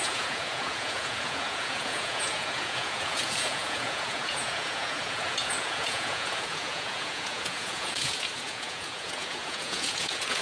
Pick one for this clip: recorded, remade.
remade